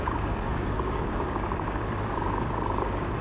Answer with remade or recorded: remade